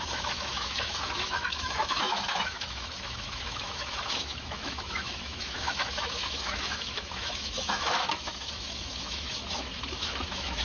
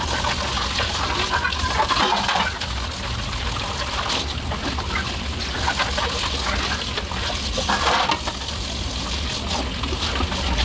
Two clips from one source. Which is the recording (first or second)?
second